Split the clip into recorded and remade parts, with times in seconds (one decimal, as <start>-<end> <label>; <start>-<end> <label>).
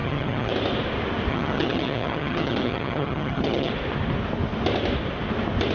0.0-0.5 remade; 0.5-1.3 recorded; 1.3-3.7 remade; 3.7-5.7 recorded